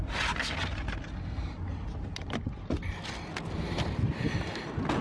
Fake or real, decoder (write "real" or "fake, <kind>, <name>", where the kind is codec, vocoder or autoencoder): real